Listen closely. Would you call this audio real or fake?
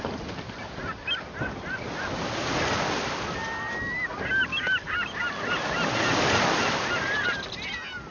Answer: real